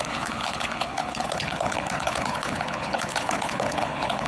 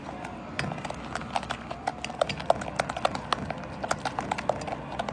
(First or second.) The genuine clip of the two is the second